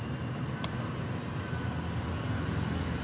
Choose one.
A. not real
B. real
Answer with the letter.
B